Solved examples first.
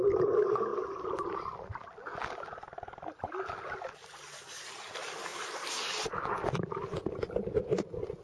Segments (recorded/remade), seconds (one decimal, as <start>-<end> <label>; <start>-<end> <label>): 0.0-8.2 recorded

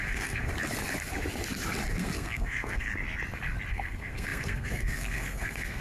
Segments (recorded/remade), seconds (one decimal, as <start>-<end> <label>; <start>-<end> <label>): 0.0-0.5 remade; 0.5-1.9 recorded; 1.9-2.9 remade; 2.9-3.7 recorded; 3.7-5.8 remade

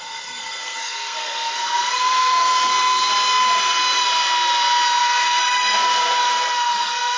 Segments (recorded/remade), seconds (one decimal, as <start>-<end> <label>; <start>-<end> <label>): 0.0-3.1 remade; 3.1-5.0 recorded; 5.0-7.2 remade